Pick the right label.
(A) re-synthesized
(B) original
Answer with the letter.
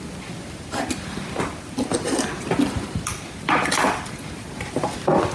B